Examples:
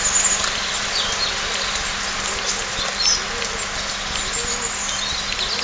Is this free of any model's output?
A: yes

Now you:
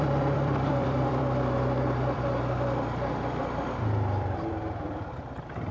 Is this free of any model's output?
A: no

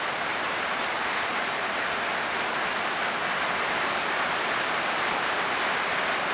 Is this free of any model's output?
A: yes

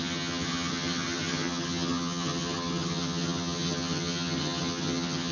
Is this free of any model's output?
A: no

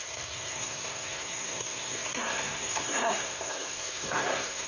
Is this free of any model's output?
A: no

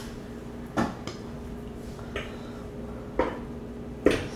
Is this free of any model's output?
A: yes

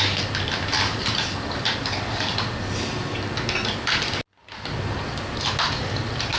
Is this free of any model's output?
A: yes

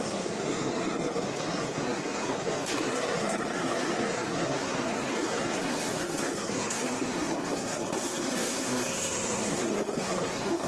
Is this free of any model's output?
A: no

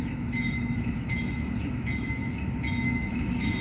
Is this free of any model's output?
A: no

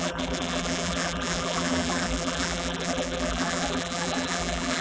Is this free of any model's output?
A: no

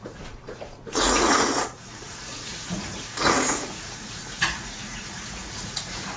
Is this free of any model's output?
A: no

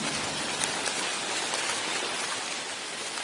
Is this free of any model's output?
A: yes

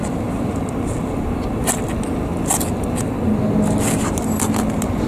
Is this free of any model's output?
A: yes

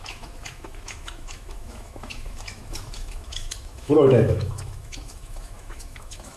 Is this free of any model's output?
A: no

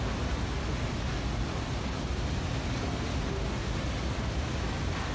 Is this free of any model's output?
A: yes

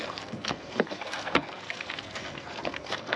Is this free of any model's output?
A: no